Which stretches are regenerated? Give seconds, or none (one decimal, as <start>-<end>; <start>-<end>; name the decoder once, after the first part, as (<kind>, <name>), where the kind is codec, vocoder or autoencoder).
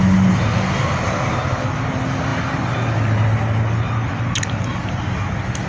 none